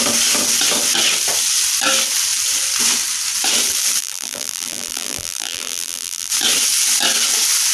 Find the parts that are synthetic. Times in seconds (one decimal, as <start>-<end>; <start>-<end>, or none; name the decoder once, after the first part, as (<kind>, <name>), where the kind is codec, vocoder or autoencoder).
4.0-6.3 (vocoder, BigVGAN v2)

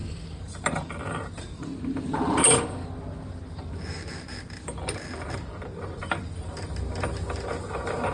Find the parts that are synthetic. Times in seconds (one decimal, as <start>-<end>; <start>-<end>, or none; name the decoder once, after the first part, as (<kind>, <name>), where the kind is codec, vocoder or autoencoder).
0.0-1.6 (vocoder, BigVGAN v2); 6.0-6.7